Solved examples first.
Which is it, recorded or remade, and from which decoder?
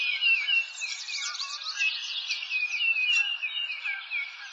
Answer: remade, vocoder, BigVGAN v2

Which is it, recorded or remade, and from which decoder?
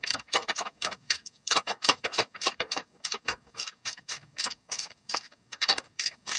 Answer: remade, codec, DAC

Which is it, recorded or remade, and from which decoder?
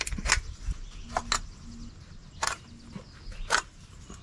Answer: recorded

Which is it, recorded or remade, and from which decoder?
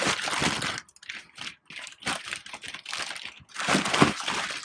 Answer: recorded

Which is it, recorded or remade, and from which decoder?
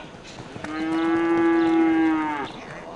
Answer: recorded